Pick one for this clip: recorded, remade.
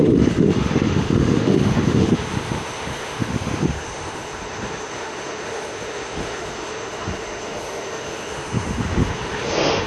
remade